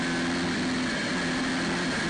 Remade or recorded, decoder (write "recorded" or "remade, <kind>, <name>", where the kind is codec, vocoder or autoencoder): recorded